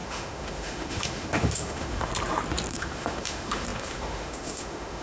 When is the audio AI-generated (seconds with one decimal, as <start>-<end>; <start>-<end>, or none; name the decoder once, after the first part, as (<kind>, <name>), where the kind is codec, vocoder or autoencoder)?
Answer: 0.0-2.1 (autoencoder, DAC-VAE); 2.7-5.0